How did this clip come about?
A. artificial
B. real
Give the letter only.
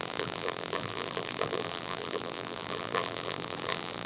A